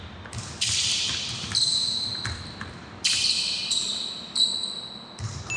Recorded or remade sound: recorded